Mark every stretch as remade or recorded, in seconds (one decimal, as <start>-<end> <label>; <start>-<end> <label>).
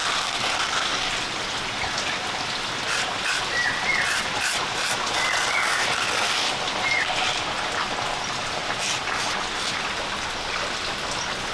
0.0-11.5 recorded